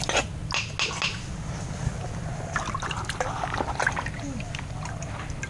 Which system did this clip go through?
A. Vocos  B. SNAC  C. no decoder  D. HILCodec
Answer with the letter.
C